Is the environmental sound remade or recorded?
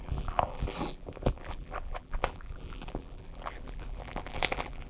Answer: remade